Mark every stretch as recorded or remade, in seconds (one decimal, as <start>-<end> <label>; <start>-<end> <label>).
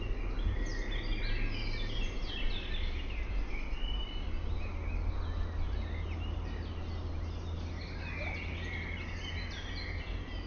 0.0-10.5 recorded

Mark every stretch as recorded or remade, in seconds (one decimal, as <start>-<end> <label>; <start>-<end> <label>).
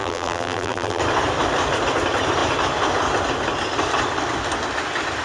0.0-1.0 remade; 1.0-5.2 recorded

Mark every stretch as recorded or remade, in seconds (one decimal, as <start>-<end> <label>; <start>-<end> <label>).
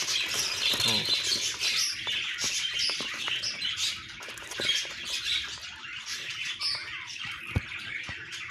0.0-1.3 recorded; 1.3-6.3 remade; 6.3-6.8 recorded; 6.8-8.5 remade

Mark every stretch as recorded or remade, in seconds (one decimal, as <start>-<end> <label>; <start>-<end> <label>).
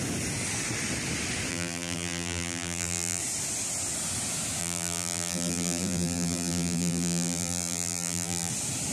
0.0-1.5 recorded; 1.5-3.2 remade; 3.2-4.6 recorded; 4.6-8.5 remade; 8.5-8.9 recorded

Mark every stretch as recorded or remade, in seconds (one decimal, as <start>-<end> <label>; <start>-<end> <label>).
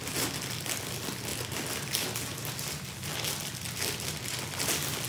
0.0-5.1 recorded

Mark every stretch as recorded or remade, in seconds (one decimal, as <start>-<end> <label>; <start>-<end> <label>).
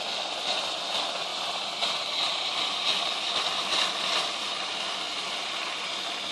0.0-6.3 recorded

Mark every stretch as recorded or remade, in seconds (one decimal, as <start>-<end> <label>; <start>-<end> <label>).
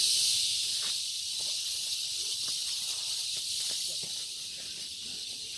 0.0-5.6 recorded